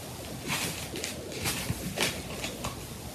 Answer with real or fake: real